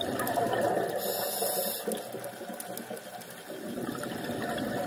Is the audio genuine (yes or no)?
yes